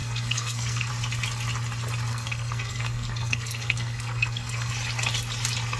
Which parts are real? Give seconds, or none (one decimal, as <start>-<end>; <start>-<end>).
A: 0.9-2.1; 4.7-5.8